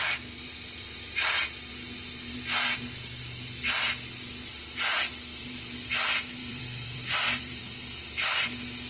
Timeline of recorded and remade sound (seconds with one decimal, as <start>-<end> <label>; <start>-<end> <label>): 0.0-6.4 recorded; 6.4-7.6 remade; 7.6-8.9 recorded